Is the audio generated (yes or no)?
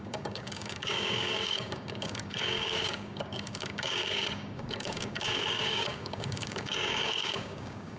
yes